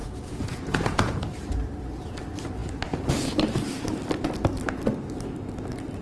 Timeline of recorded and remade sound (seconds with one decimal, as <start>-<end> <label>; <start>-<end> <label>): 0.0-1.2 remade; 1.2-6.0 recorded